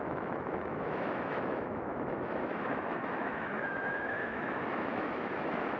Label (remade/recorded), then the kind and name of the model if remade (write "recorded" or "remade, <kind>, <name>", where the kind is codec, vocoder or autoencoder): remade, autoencoder, DAC-VAE